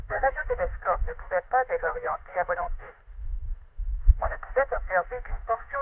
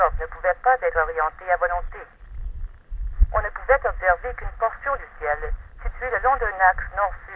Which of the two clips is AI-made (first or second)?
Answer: first